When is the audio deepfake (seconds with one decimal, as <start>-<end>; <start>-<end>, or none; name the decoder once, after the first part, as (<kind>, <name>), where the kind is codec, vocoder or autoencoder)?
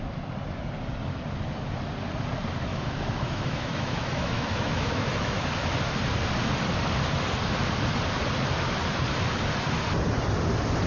2.7-5.4 (autoencoder, DAC-VAE)